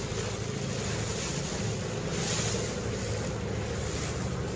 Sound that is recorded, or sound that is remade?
recorded